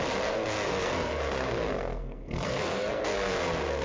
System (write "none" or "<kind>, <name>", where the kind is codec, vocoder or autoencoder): codec, SNAC